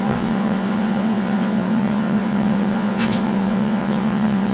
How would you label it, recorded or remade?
remade